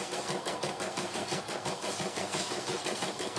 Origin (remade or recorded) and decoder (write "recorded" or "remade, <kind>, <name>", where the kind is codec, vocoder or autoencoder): remade, codec, SNAC